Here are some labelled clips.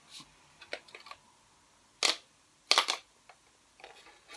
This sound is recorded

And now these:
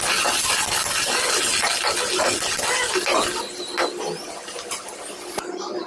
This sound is recorded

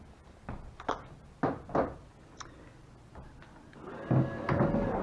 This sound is recorded